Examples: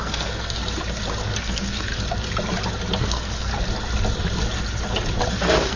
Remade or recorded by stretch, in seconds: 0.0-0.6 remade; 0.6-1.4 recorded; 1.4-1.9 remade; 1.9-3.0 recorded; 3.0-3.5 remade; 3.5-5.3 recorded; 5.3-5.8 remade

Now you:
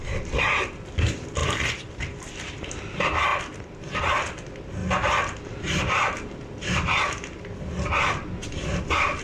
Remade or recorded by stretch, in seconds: 0.0-1.4 recorded; 1.4-2.5 remade; 2.5-3.3 recorded; 3.3-4.0 remade; 4.0-4.8 recorded; 4.8-5.8 remade; 5.8-8.4 recorded; 8.4-9.2 remade

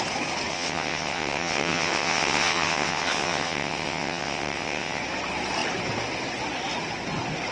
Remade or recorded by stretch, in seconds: 0.0-0.5 recorded; 0.5-5.0 remade; 5.0-7.5 recorded

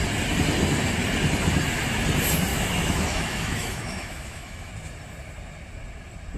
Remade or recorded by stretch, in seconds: 0.0-2.5 recorded; 2.5-4.7 remade; 4.7-6.4 recorded

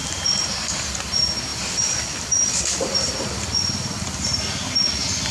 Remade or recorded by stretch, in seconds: 0.0-0.8 remade; 0.8-1.5 recorded; 1.5-4.7 remade; 4.7-5.3 recorded

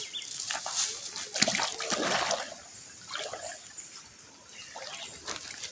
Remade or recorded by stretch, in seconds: 0.0-5.7 recorded